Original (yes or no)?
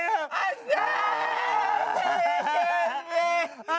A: yes